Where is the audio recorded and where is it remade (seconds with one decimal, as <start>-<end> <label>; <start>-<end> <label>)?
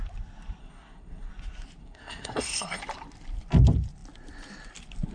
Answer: 0.0-0.6 recorded; 0.6-1.3 remade; 1.3-1.8 recorded; 1.8-2.8 remade; 2.8-5.1 recorded